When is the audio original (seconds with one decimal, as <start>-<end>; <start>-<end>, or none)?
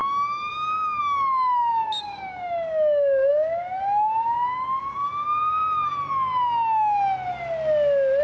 5.6-8.2